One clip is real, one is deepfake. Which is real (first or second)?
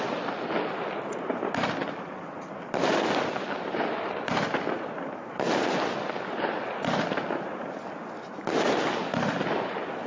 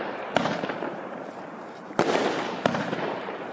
first